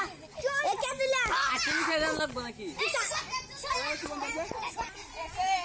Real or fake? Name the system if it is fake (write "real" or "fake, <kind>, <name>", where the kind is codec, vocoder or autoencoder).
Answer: real